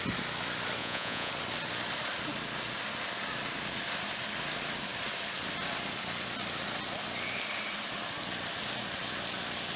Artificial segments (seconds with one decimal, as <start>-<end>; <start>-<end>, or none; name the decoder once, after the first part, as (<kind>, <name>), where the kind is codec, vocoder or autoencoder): 0.8-1.3 (vocoder, Vocos)